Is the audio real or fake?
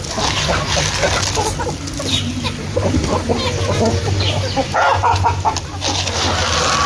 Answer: real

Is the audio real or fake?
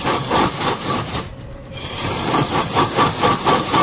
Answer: real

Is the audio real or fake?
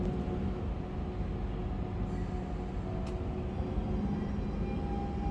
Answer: real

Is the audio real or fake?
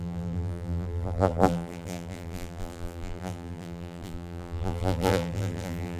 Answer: fake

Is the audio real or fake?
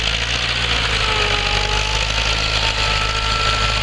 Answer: real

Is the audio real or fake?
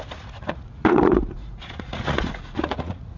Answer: fake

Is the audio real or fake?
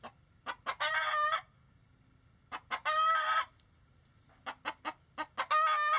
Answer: real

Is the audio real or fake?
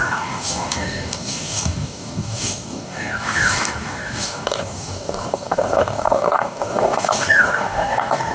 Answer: fake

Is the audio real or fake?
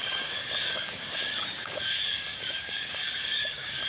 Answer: fake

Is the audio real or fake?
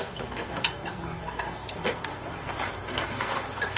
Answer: fake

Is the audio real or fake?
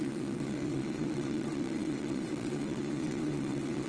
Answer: fake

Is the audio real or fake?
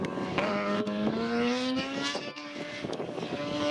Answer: fake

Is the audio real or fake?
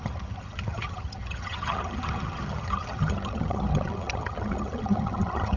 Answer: fake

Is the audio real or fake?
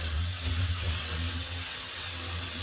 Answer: fake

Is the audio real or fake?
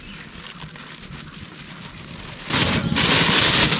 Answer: real